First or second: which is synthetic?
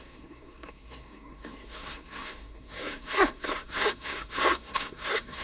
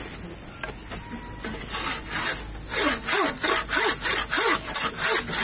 first